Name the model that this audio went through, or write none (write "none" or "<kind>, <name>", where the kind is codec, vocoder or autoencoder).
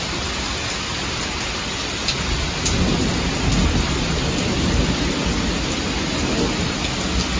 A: none